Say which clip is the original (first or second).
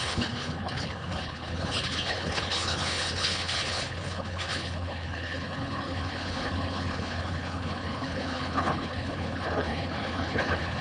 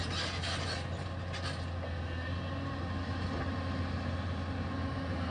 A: second